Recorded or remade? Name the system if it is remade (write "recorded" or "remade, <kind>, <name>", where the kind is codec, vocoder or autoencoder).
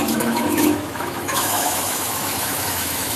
remade, autoencoder, DAC-VAE